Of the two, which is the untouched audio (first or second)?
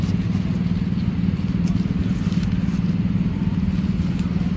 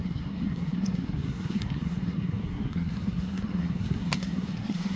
first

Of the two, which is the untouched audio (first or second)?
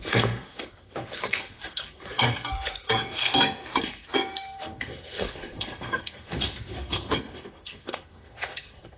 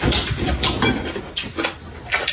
second